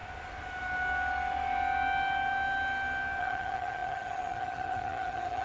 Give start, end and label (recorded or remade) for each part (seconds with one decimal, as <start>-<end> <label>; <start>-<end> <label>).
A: 0.0-3.2 recorded; 3.2-5.4 remade